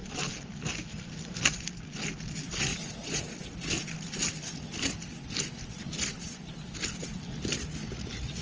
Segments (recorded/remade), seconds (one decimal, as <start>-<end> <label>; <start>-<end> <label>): 0.0-2.7 recorded; 2.7-3.2 remade; 3.2-8.4 recorded